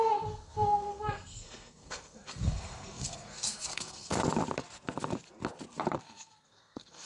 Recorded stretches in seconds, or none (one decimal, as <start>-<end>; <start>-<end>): 4.2-6.0